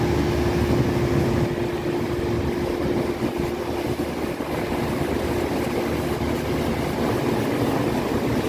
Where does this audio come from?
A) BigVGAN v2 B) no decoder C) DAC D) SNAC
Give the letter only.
B